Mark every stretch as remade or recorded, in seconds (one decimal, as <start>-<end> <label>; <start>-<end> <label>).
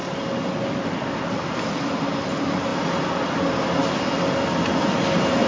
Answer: 0.0-5.5 recorded